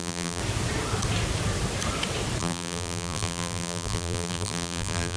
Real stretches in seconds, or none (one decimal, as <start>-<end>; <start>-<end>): 0.4-2.4